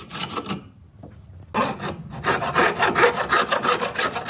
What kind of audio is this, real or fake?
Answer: real